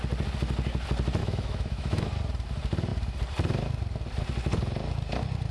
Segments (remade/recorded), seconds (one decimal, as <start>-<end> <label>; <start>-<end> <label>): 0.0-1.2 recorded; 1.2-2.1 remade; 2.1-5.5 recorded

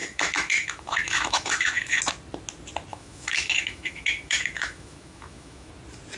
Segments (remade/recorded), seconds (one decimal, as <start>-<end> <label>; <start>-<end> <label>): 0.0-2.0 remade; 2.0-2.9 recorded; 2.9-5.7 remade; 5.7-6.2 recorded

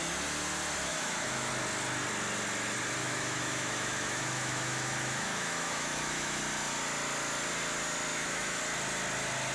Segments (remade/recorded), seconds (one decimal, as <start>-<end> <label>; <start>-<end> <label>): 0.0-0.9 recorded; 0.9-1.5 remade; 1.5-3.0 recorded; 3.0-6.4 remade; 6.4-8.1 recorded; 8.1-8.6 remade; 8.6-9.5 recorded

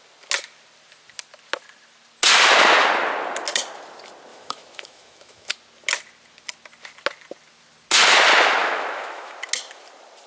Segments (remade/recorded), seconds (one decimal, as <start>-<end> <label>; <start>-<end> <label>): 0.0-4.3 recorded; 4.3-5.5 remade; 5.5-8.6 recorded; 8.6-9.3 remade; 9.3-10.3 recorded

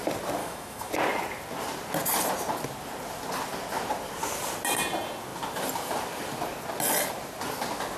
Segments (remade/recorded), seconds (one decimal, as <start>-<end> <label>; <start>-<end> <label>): 0.0-0.4 recorded; 0.4-0.9 remade; 0.9-8.0 recorded